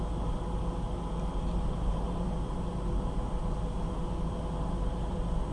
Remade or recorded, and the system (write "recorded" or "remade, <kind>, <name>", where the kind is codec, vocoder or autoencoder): recorded